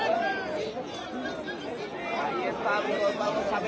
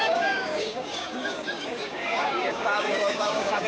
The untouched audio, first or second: first